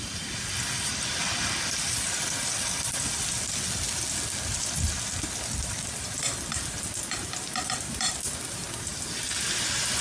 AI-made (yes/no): no